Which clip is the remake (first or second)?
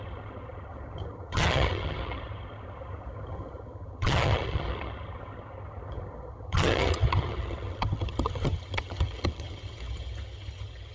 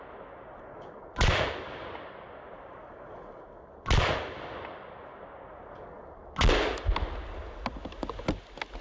first